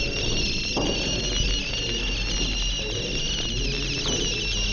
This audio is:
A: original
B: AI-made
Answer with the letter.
A